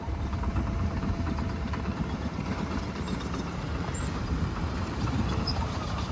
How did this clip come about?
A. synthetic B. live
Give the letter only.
A